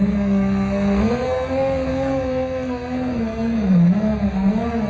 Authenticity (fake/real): fake